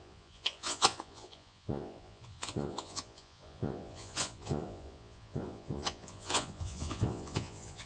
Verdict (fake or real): fake